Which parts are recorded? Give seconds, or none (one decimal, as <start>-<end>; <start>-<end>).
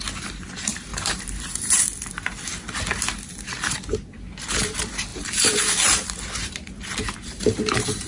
0.0-0.9; 1.8-5.1; 5.6-6.4